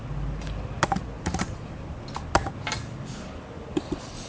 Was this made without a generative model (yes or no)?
yes